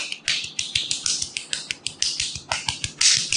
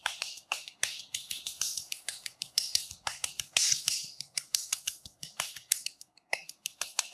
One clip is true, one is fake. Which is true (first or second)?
first